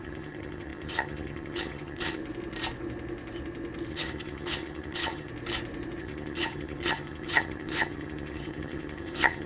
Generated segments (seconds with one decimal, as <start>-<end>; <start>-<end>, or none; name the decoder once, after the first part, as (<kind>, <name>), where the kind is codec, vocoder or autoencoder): 0.0-2.2 (vocoder, HiFi-GAN); 3.9-5.3; 6.0-9.5

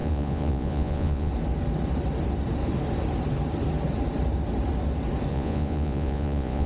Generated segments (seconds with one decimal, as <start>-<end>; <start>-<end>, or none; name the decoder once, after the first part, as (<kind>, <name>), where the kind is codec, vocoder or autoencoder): 0.0-1.3 (vocoder, Vocos); 5.3-6.7

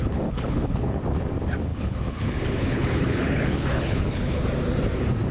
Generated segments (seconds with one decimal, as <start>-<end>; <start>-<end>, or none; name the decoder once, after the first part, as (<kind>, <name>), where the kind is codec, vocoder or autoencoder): 0.0-1.0 (codec, HILCodec); 1.7-4.4

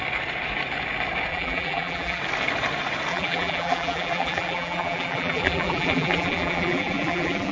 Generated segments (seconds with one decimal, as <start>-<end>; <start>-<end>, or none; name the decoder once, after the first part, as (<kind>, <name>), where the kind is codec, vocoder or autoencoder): 1.3-2.2 (vocoder, BigVGAN v2); 3.1-7.5

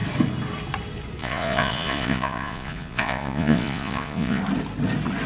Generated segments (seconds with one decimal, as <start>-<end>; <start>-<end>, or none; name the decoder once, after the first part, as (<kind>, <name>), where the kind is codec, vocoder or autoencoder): 1.2-4.4 (vocoder, Vocos)

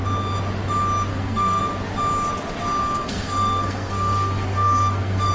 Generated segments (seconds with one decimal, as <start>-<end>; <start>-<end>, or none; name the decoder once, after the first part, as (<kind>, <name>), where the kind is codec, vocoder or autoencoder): 1.1-1.6 (codec, SNAC); 2.8-5.3

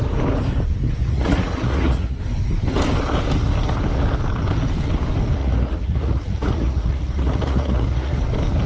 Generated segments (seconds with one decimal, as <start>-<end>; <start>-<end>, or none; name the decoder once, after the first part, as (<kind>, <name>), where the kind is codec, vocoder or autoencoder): 1.0-2.2 (vocoder, Vocos); 5.4-8.2